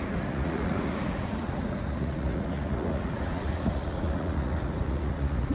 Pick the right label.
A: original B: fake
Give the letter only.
B